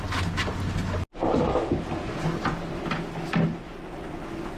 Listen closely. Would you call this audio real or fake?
real